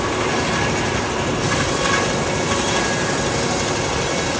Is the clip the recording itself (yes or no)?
yes